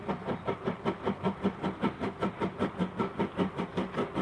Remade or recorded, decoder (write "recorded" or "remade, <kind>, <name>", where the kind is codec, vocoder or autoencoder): recorded